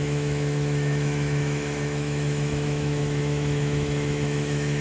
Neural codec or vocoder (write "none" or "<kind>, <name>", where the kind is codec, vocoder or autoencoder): autoencoder, DAC-VAE